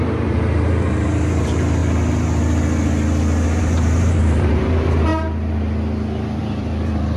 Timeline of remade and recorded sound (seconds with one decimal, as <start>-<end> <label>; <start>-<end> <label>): 0.0-1.8 remade; 1.8-3.6 recorded; 3.6-5.1 remade; 5.1-6.4 recorded; 6.4-7.2 remade